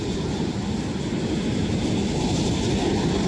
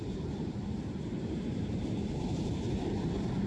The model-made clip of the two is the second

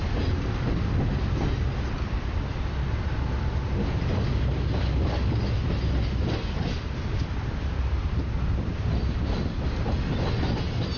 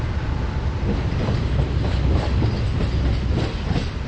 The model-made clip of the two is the second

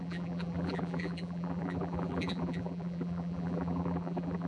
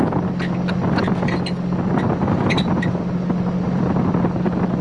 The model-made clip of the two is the first